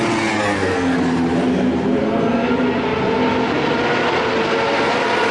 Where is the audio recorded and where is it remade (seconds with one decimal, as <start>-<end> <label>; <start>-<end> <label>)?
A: 0.0-0.5 recorded; 0.5-1.0 remade; 1.0-2.0 recorded; 2.0-2.5 remade; 2.5-5.3 recorded